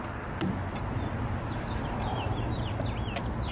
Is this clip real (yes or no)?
yes